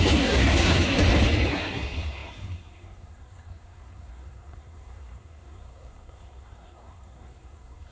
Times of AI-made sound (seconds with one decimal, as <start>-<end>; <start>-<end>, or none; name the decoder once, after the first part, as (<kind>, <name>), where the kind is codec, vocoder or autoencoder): 0.0-1.0 (codec, SNAC); 1.5-7.9